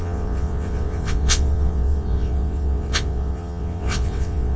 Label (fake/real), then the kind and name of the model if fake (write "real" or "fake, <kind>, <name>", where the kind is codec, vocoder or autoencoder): fake, vocoder, WaveNeXt